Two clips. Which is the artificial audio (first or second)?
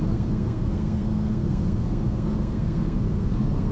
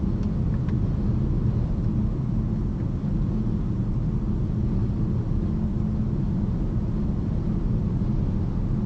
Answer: first